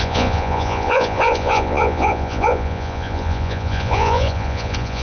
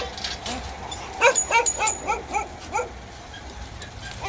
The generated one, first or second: first